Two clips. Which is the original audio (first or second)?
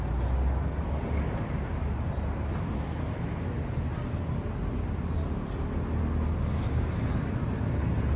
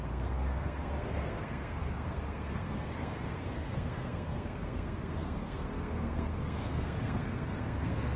first